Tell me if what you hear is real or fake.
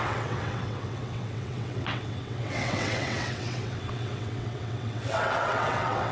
fake